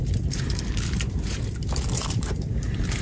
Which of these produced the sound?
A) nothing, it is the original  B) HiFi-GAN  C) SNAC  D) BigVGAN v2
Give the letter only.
D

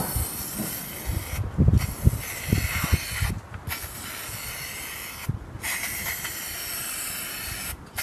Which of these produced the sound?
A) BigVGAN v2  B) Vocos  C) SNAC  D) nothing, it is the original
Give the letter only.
D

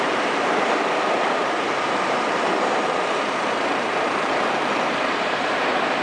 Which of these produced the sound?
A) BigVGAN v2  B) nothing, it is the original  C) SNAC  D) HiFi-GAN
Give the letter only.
A